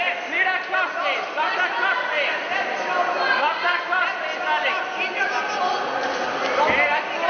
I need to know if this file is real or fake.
real